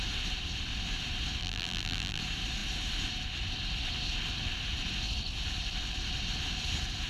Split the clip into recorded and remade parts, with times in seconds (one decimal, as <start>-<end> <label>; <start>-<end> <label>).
0.0-1.4 recorded; 1.4-2.2 remade; 2.2-7.1 recorded